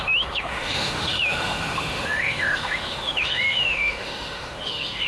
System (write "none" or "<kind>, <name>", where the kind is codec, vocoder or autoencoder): autoencoder, DAC-VAE